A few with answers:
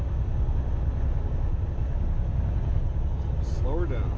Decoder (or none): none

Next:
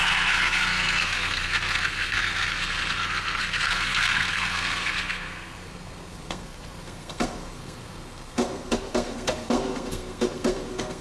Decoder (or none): codec, SNAC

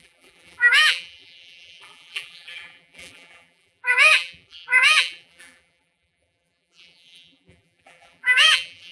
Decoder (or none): vocoder, BigVGAN v2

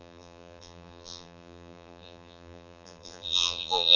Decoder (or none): vocoder, BigVGAN v2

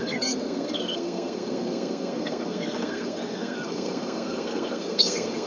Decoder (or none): codec, SNAC